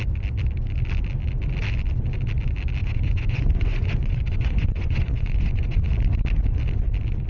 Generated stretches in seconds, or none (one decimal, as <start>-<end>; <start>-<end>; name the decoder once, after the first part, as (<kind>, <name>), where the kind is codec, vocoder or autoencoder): 2.8-5.9 (vocoder, Vocos)